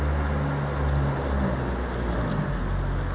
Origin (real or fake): real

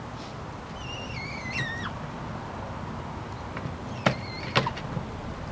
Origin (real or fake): real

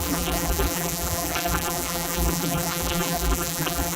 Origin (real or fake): fake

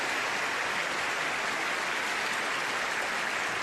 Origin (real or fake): real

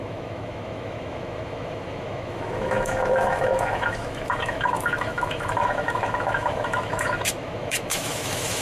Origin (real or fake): fake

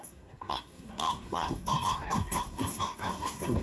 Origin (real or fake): fake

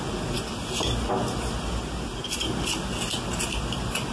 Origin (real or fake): real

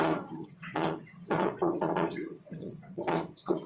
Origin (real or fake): fake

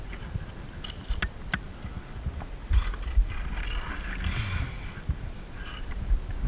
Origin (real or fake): real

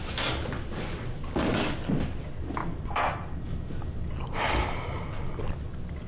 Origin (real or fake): real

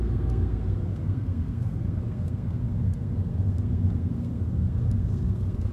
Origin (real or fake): fake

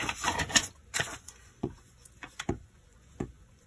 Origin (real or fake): fake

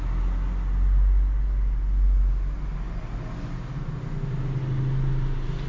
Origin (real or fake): real